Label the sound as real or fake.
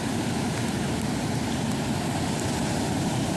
real